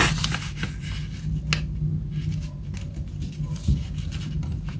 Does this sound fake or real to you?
real